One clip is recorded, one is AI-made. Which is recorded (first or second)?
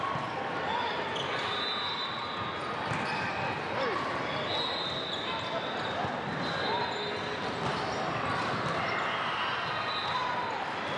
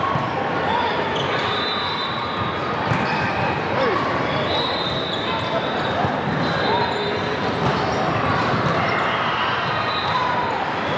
first